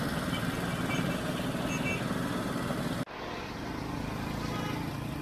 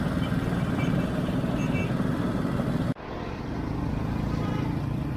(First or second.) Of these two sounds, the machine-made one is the second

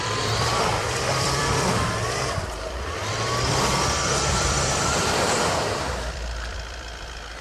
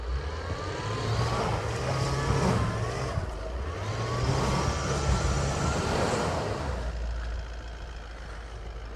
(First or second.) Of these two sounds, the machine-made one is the first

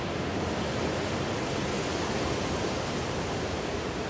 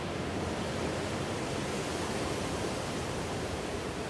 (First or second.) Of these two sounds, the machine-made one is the second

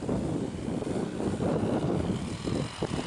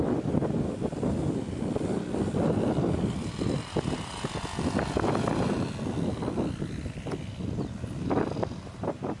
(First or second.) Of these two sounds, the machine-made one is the first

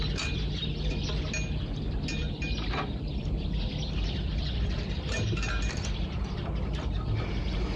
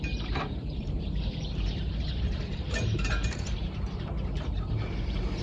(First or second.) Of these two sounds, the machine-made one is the second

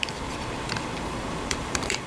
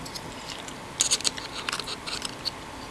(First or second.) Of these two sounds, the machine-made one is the first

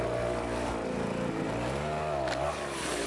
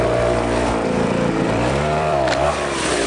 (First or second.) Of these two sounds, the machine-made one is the second